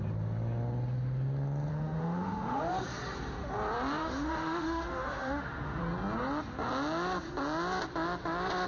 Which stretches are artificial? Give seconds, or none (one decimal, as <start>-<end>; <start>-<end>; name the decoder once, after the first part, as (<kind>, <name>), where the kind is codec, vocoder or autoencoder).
1.7-2.6 (autoencoder, DAC-VAE); 4.0-5.8